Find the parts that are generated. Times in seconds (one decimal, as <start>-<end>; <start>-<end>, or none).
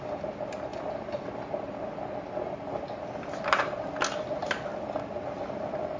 none